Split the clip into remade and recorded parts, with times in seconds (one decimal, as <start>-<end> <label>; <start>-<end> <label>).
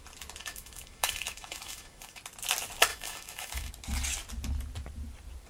0.0-0.4 recorded; 0.4-2.2 remade; 2.2-2.9 recorded; 2.9-3.7 remade; 3.7-5.5 recorded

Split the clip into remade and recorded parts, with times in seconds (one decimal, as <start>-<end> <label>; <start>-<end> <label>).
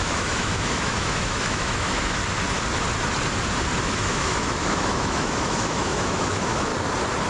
0.0-2.2 remade; 2.2-3.8 recorded; 3.8-6.7 remade; 6.7-7.3 recorded